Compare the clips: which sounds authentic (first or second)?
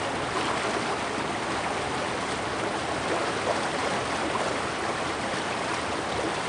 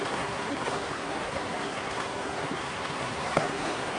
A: first